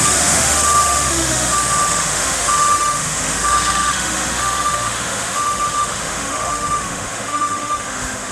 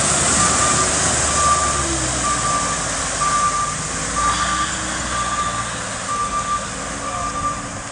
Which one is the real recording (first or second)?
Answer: second